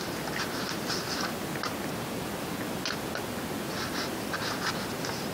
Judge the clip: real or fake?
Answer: real